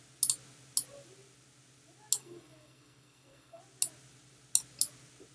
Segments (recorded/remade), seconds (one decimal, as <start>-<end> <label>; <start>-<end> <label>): 0.0-2.2 recorded; 2.2-3.6 remade; 3.6-5.3 recorded